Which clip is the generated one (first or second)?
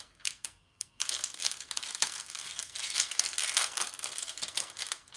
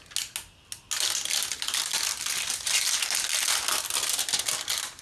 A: first